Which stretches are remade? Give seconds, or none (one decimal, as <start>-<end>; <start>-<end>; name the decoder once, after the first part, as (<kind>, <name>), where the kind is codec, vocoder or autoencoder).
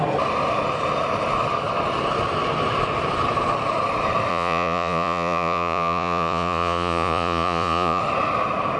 4.3-8.0 (vocoder, Vocos)